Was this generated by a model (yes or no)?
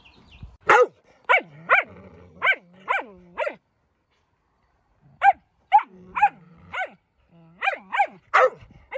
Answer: no